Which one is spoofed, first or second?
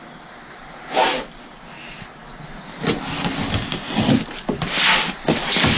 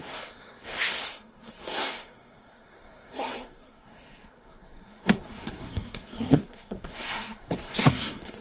second